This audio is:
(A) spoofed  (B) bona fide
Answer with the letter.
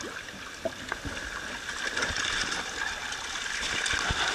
B